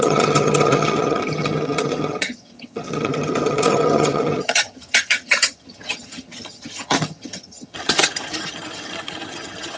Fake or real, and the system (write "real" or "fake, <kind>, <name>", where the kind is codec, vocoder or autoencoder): fake, vocoder, HiFi-GAN